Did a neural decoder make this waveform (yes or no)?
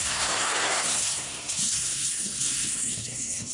yes